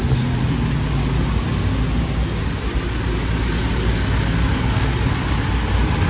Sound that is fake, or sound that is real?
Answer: real